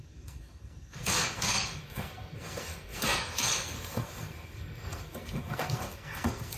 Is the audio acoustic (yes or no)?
no